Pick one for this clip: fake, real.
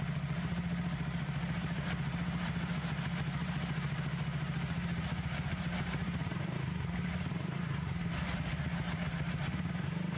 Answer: fake